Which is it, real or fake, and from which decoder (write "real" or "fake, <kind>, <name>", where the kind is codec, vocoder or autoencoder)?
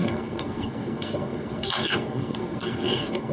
fake, codec, SNAC